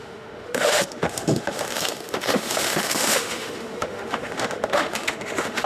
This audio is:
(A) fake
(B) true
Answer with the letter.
A